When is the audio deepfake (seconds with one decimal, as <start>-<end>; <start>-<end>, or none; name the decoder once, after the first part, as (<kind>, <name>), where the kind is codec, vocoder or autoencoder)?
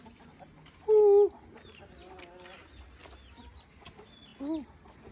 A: none